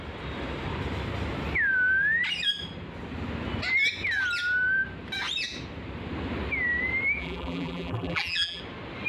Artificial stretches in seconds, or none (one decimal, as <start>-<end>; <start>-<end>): 7.2-8.6